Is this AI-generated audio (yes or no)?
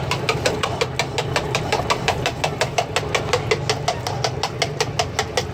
no